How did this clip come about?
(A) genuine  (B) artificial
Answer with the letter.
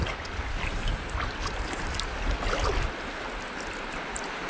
A